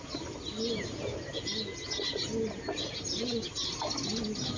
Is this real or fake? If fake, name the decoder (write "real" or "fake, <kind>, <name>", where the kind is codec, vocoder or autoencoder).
real